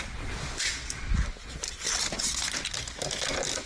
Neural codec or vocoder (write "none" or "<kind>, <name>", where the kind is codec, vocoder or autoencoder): none